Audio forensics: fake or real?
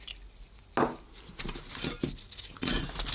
real